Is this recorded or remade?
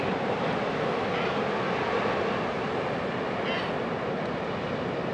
recorded